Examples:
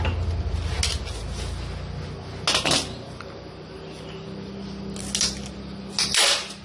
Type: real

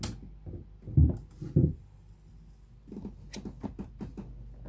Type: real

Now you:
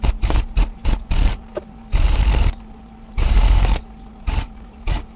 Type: fake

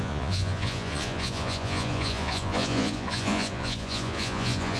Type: fake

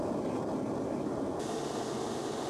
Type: real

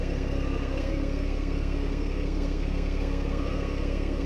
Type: fake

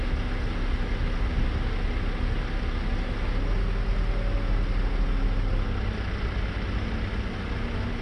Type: real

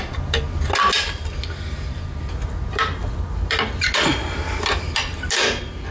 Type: fake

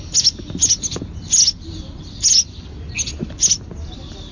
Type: real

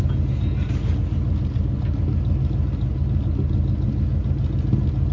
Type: real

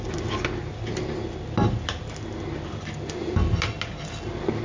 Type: real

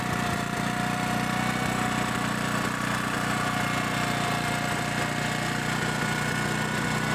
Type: real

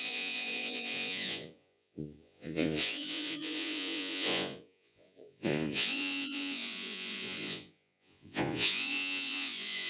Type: fake